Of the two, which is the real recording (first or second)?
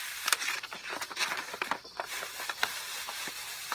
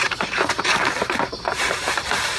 first